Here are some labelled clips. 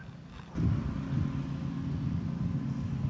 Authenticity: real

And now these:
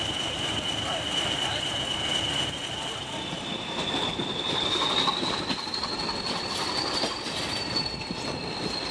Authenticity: real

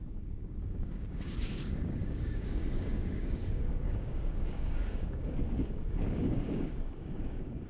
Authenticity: fake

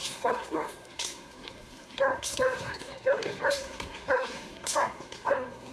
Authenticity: fake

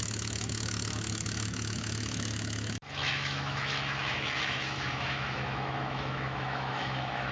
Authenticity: fake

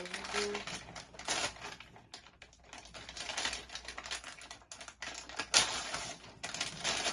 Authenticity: real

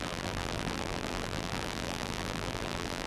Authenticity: fake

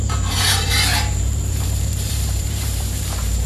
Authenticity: fake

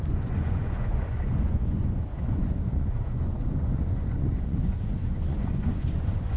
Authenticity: fake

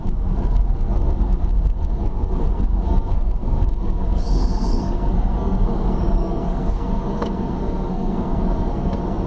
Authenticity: fake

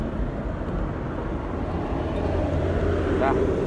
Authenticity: real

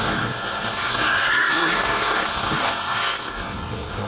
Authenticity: fake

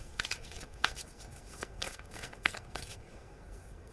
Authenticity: fake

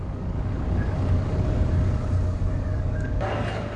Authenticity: fake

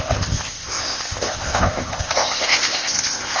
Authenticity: fake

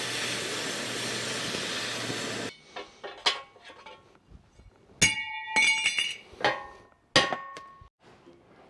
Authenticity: real